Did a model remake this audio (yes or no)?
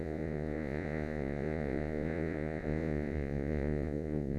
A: yes